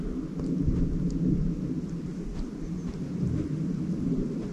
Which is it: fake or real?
real